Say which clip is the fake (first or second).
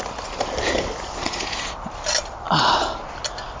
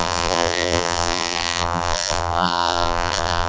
second